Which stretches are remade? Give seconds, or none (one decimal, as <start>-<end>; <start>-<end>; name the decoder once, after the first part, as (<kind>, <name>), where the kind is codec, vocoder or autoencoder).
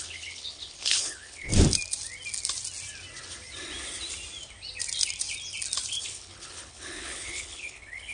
0.0-1.5 (codec, HILCodec); 6.0-8.1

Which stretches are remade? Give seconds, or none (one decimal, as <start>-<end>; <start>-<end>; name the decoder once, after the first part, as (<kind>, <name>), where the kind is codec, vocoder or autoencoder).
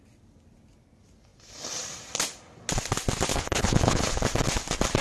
3.3-4.2 (codec, HILCodec)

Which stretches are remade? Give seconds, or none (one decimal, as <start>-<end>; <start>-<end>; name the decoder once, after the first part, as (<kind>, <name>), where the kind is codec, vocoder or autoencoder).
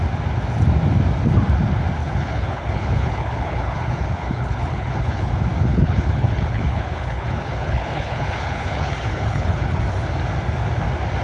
2.0-5.3 (codec, HILCodec); 5.7-9.8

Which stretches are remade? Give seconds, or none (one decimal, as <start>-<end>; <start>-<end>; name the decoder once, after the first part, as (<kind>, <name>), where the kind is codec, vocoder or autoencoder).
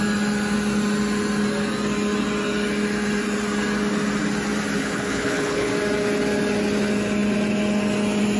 4.8-5.7 (codec, HILCodec)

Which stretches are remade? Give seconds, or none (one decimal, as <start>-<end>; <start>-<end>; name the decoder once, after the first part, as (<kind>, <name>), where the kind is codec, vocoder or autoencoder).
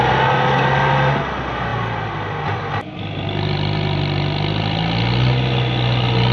none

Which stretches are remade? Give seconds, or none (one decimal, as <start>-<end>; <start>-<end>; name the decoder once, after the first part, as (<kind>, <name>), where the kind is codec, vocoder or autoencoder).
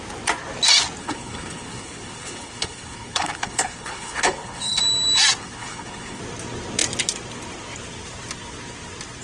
1.0-4.8 (codec, HILCodec); 5.4-6.2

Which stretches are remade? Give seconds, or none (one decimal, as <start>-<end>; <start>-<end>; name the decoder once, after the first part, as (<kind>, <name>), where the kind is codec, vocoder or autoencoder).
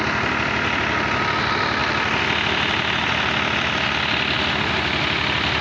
none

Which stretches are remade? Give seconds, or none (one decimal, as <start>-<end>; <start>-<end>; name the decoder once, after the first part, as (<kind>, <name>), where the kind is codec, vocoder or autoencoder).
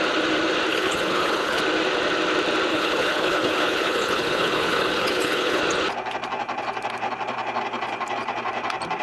0.7-1.6 (codec, HILCodec); 2.7-5.6